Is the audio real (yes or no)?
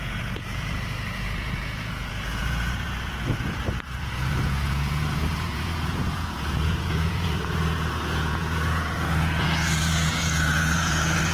no